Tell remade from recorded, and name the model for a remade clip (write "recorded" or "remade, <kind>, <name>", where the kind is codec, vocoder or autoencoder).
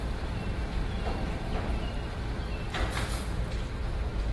recorded